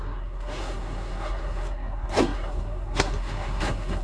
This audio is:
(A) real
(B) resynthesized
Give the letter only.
B